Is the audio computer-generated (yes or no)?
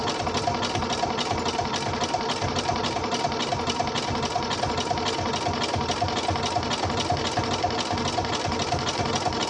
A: no